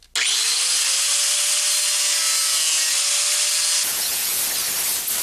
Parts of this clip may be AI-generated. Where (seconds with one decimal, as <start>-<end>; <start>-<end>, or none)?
3.9-4.4